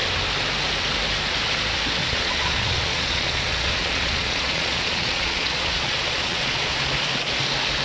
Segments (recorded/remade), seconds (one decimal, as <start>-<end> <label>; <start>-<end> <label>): 0.0-2.0 recorded; 2.0-6.7 remade; 6.7-7.8 recorded